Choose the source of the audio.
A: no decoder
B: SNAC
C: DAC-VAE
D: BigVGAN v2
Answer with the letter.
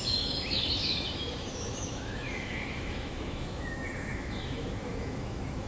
C